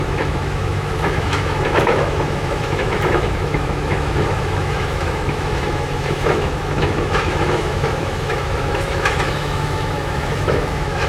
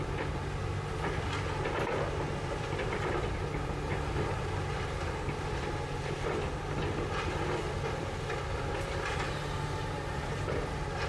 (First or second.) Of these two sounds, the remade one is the first